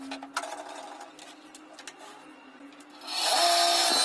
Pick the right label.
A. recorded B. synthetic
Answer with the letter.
A